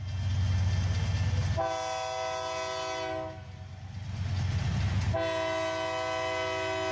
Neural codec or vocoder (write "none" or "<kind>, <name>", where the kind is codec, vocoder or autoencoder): none